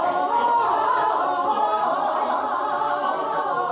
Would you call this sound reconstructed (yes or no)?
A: no